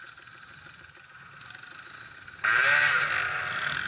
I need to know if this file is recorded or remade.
recorded